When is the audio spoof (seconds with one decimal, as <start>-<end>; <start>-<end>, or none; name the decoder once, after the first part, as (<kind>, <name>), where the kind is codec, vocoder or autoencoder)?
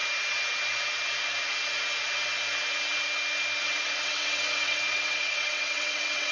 3.6-6.3 (vocoder, WaveNeXt)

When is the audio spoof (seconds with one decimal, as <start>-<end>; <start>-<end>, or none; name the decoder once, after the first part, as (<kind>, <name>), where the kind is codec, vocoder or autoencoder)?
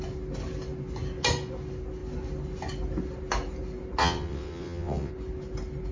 4.0-5.1 (vocoder, WaveNeXt)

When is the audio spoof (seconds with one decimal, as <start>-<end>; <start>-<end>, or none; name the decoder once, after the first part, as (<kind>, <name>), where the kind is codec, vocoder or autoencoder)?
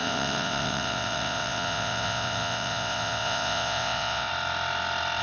0.0-4.3 (vocoder, WaveNeXt)